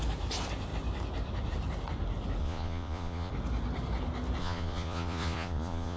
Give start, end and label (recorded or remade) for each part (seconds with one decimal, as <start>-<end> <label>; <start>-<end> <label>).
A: 0.0-2.4 recorded; 2.4-3.3 remade; 3.3-4.4 recorded; 4.4-6.0 remade